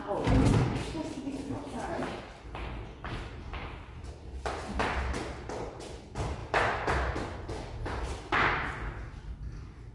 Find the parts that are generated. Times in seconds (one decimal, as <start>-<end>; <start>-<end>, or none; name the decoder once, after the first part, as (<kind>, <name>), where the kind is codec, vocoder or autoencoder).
none